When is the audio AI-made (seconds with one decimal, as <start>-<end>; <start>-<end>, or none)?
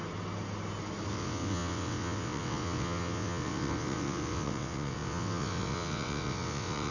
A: 1.1-6.9